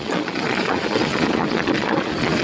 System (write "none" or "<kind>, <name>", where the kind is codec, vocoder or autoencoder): vocoder, Vocos